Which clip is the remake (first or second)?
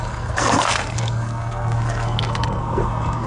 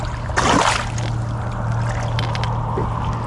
first